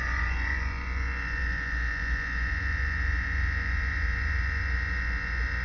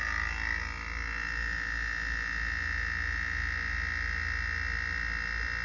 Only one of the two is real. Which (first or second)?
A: second